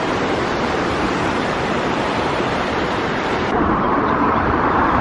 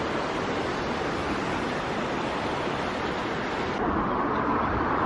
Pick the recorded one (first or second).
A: second